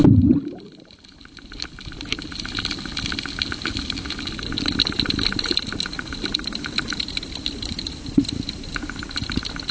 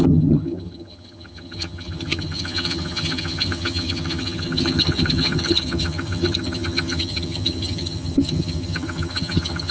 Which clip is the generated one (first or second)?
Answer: second